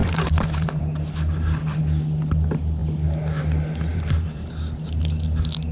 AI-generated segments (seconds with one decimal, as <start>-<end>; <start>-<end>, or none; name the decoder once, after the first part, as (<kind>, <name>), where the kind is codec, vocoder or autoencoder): 0.0-0.8 (vocoder, BigVGAN v2); 3.9-4.5